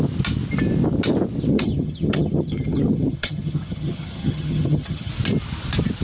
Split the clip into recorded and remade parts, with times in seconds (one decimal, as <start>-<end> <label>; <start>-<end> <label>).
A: 0.0-1.5 recorded; 1.5-5.1 remade; 5.1-6.0 recorded